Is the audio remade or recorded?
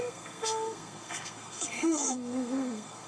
remade